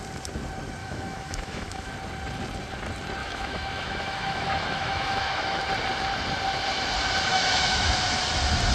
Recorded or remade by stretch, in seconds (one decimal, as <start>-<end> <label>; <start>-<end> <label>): 0.0-0.8 recorded; 0.8-1.9 remade; 1.9-3.2 recorded; 3.2-5.6 remade; 5.6-7.3 recorded; 7.3-8.0 remade; 8.0-8.7 recorded